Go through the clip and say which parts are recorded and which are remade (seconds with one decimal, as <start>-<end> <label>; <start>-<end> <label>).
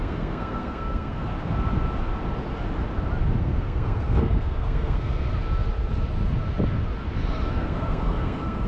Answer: 0.0-1.3 remade; 1.3-3.4 recorded; 3.4-5.3 remade; 5.3-7.5 recorded; 7.5-8.7 remade